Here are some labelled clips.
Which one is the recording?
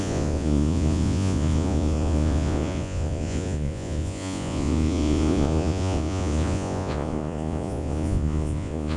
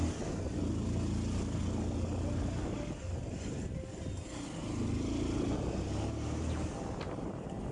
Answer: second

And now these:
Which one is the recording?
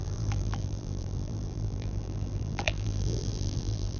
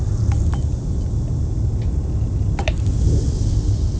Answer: second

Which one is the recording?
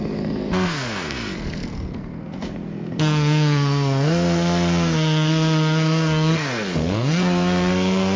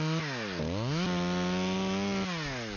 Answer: second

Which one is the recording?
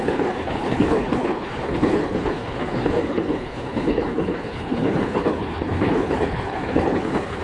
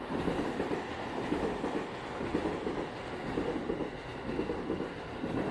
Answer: second